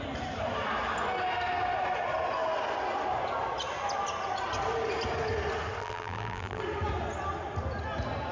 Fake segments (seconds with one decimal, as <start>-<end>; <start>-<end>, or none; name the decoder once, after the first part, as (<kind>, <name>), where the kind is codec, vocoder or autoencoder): 5.8-6.6 (vocoder, BigVGAN v2)